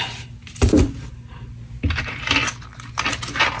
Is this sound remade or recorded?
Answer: recorded